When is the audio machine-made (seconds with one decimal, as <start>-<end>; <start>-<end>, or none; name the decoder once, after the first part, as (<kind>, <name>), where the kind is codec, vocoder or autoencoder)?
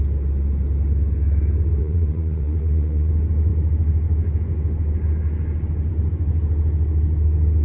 1.8-3.1 (vocoder, WaveNeXt)